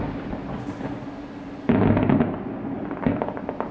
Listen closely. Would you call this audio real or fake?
real